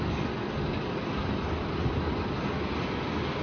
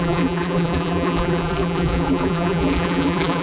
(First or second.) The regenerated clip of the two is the second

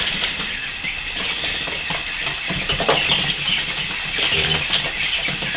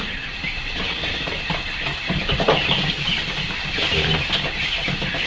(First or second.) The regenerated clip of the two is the second